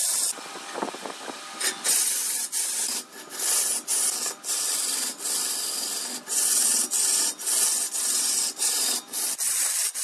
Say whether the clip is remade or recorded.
recorded